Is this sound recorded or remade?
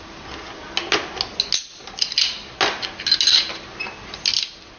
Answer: recorded